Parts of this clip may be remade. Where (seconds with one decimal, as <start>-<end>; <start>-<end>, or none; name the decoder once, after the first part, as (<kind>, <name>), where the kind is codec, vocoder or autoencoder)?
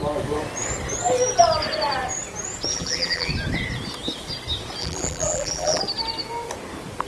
2.7-3.3 (vocoder, BigVGAN v2); 4.8-5.8